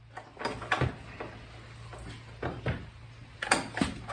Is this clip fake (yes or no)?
no